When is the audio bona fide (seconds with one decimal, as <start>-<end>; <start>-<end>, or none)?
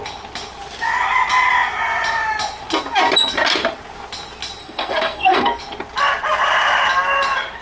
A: 0.0-4.6; 5.6-7.6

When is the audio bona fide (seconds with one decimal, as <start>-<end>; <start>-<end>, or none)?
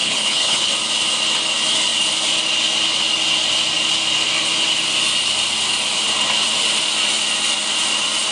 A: 0.7-8.3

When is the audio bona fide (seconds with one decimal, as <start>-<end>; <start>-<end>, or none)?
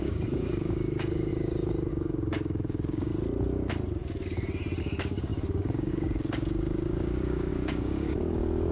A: 1.3-1.9; 3.1-4.8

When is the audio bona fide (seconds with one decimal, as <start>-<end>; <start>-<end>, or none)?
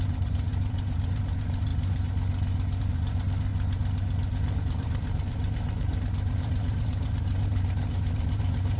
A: 1.7-2.8; 3.5-4.6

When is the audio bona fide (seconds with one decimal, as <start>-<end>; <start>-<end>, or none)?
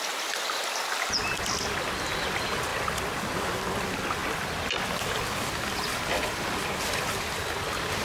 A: 0.0-8.0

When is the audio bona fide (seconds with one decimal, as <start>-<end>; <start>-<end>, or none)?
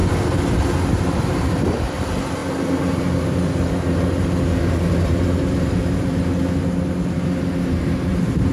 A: 0.0-1.2; 2.4-4.6; 6.4-7.5